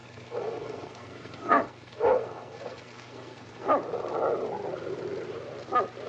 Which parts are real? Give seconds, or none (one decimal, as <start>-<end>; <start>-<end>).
3.7-6.1